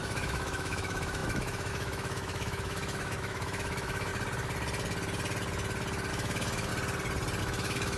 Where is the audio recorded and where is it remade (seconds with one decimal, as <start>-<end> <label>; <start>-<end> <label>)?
0.0-4.1 remade; 4.1-6.1 recorded; 6.1-6.7 remade; 6.7-7.4 recorded; 7.4-8.0 remade